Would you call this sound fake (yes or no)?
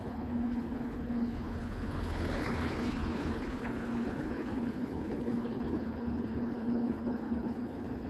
yes